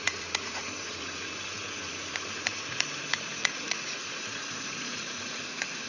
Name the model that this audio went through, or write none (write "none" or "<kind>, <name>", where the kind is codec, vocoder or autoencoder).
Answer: vocoder, Vocos